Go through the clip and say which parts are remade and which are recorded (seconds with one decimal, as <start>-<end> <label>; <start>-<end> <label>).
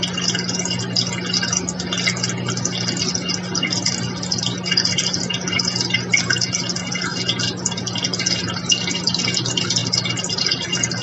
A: 0.0-11.0 recorded